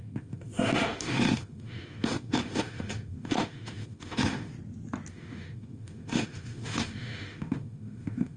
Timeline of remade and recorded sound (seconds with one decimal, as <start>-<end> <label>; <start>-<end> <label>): 0.0-4.5 remade; 4.5-5.1 recorded; 5.1-8.4 remade